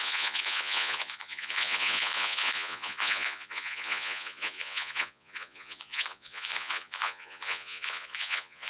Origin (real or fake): fake